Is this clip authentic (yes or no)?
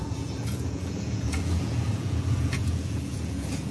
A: no